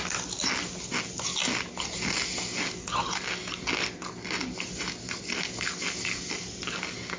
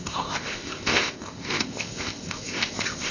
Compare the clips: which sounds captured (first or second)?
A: first